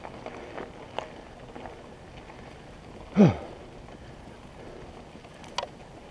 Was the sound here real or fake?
real